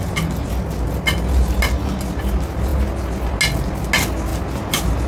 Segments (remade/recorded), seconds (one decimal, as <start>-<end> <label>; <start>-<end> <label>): 0.0-5.1 recorded